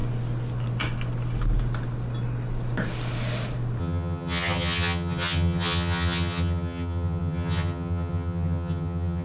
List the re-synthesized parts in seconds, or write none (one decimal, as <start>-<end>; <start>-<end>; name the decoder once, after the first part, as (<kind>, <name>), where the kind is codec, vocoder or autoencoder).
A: 3.8-9.2 (vocoder, HiFi-GAN)